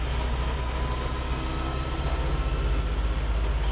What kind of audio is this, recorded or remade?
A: recorded